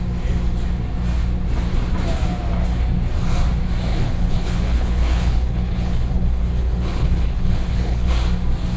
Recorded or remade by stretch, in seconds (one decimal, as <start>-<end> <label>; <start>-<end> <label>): 0.0-3.9 recorded; 3.9-8.1 remade; 8.1-8.8 recorded